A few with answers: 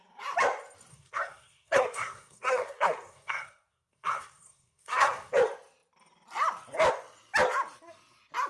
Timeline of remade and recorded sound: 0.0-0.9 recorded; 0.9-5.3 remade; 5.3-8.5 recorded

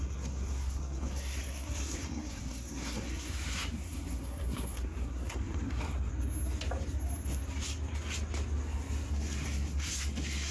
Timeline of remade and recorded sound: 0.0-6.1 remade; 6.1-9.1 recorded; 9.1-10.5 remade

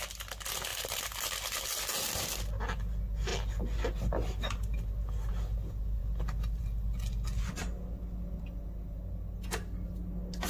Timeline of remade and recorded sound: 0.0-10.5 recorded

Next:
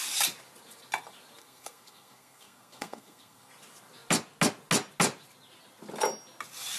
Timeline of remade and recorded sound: 0.0-1.4 recorded; 1.4-3.5 remade; 3.5-6.8 recorded

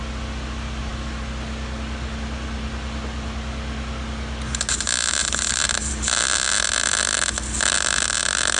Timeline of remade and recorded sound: 0.0-8.6 recorded

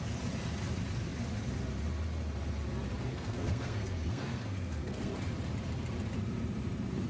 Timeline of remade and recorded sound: 0.0-3.1 recorded; 3.1-5.1 remade; 5.1-7.1 recorded

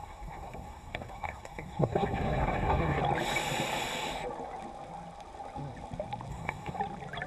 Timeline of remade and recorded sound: 0.0-3.0 remade; 3.0-6.3 recorded; 6.3-6.8 remade; 6.8-7.3 recorded